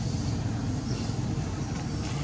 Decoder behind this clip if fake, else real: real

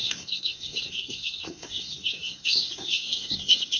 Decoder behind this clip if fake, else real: fake, codec, SNAC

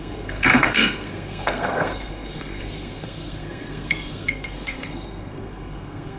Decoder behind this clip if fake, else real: fake, codec, SNAC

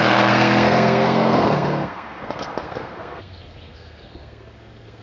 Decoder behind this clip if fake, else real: fake, codec, SNAC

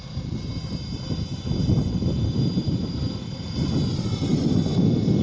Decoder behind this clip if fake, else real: real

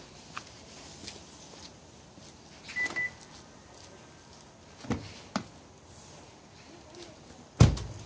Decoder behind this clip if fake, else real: real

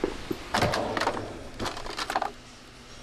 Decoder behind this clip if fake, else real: real